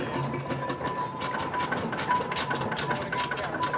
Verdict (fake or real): real